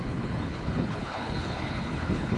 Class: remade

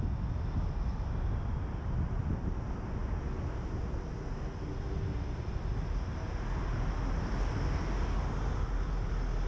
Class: recorded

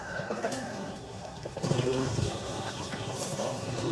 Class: remade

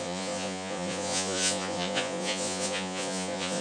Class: remade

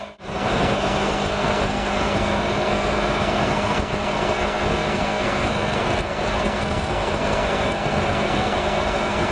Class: remade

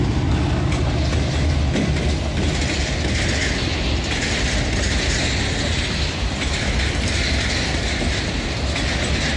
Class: recorded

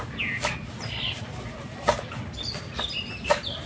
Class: recorded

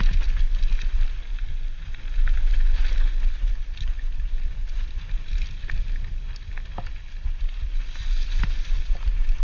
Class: recorded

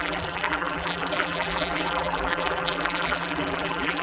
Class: remade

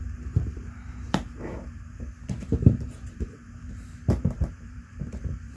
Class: remade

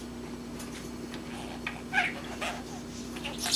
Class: recorded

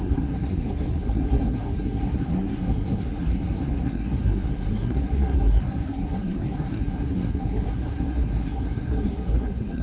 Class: remade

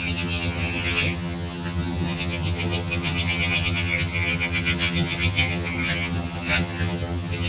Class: remade